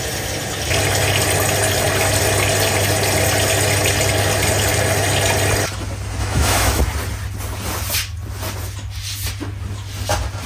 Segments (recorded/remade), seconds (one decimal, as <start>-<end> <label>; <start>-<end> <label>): 0.0-6.2 recorded; 6.2-6.8 remade; 6.8-10.5 recorded